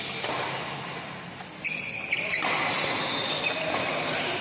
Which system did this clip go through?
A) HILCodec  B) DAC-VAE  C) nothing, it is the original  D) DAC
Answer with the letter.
C